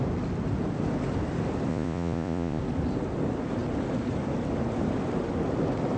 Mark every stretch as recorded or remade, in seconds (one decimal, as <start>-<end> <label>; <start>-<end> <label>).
0.0-1.7 recorded; 1.7-2.6 remade; 2.6-6.0 recorded